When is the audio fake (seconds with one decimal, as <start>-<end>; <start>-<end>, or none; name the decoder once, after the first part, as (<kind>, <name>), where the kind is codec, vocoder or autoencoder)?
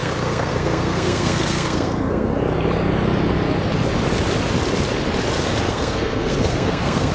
0.0-2.3 (codec, SNAC); 5.7-7.1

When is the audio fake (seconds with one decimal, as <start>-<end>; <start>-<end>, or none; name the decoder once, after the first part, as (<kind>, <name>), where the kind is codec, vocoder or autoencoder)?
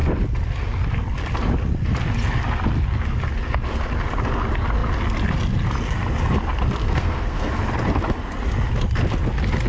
6.8-7.5 (codec, SNAC)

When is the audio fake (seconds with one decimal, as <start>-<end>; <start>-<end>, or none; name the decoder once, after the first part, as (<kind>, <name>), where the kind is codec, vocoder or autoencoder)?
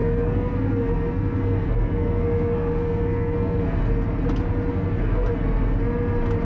0.0-3.8 (codec, SNAC); 4.7-5.3